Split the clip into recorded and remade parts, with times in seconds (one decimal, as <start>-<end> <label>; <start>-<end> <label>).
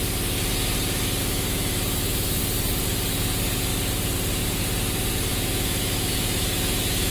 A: 0.0-1.2 recorded; 1.2-2.4 remade; 2.4-5.3 recorded; 5.3-7.1 remade